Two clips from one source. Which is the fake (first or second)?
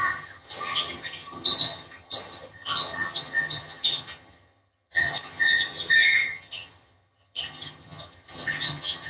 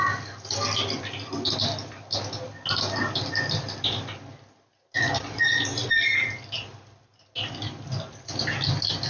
first